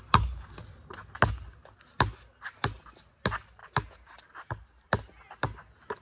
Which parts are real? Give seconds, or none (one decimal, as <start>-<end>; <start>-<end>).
0.0-6.0